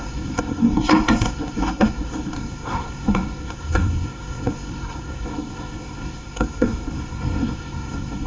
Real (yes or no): no